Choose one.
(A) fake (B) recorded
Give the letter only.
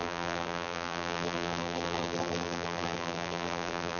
A